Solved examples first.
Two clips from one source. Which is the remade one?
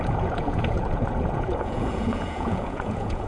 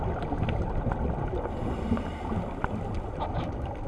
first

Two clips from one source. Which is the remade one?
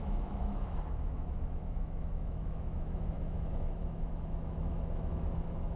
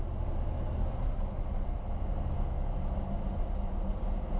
first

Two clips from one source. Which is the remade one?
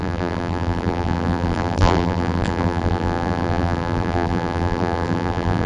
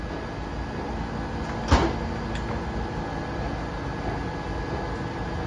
first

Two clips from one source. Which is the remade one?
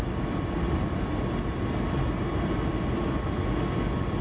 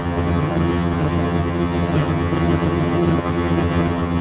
second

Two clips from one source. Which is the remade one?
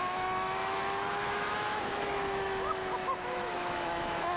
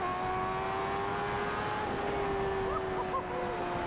first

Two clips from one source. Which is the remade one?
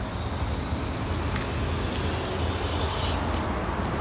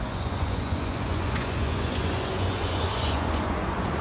second